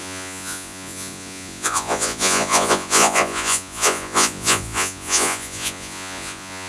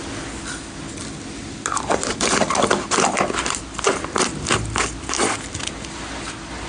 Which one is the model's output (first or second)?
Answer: first